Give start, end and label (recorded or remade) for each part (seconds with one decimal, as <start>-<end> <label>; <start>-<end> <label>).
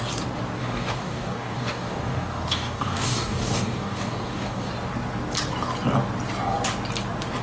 0.0-0.6 recorded; 0.6-4.7 remade; 4.7-7.4 recorded